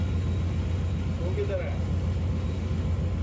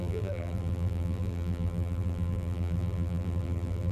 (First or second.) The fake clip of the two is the second